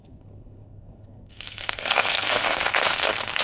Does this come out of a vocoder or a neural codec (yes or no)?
yes